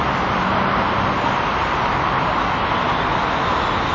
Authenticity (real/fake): real